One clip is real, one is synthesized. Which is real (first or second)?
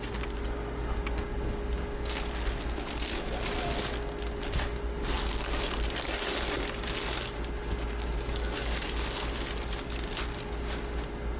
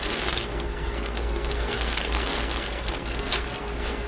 first